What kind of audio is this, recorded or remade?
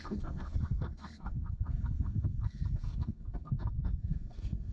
remade